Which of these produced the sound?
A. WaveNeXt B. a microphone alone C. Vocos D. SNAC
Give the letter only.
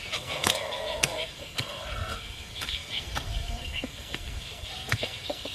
D